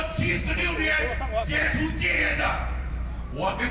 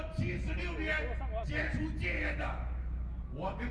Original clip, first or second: second